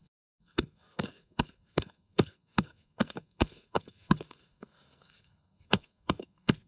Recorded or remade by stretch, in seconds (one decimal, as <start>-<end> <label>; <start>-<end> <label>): 0.0-6.7 remade